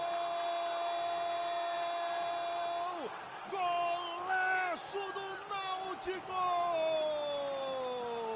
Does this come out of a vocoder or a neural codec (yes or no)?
no